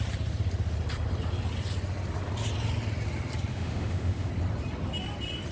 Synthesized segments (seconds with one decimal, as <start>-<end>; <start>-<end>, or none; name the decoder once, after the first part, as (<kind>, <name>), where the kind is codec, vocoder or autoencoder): 3.5-4.3 (autoencoder, DAC-VAE)